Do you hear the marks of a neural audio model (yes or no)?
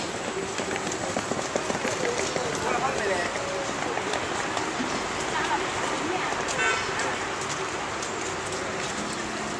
no